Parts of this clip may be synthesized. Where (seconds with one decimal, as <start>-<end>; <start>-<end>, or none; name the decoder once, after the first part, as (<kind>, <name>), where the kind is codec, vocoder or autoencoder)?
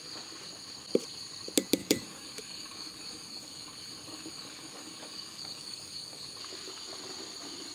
1.8-6.4 (codec, DAC)